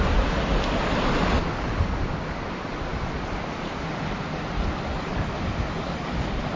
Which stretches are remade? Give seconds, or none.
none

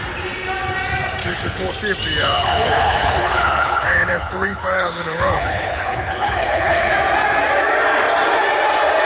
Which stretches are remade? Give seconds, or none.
1.2-1.7; 2.2-6.9

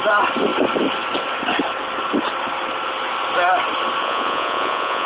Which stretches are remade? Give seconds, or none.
4.0-5.1

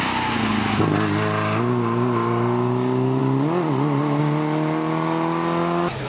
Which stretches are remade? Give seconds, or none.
none

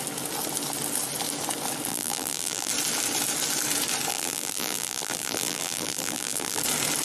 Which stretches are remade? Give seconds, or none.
1.9-2.7; 4.1-6.6

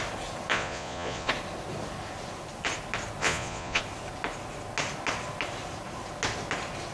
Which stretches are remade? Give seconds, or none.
0.5-1.3; 3.2-3.8

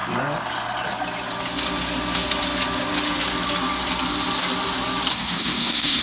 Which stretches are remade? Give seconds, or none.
5.1-6.0

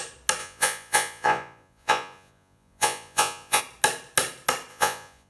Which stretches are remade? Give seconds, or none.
0.4-3.6; 4.7-5.3